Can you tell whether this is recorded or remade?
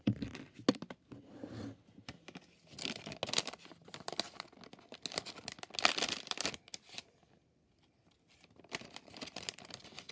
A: recorded